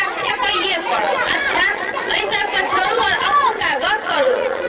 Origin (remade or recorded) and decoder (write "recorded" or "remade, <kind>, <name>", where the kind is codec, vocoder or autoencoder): remade, vocoder, Vocos